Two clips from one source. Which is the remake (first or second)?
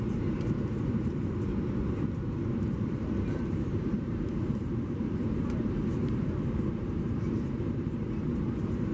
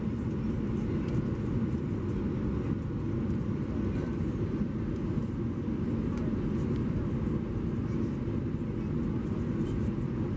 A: first